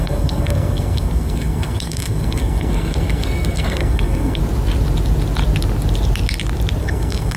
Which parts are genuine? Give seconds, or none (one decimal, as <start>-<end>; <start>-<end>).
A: 4.4-6.8